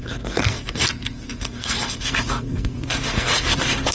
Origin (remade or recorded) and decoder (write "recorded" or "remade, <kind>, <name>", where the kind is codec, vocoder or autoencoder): remade, codec, SNAC